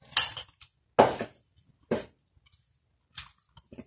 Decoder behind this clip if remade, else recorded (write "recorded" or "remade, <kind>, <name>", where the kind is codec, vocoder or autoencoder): recorded